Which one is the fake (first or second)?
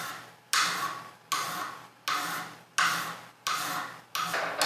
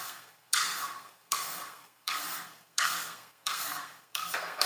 second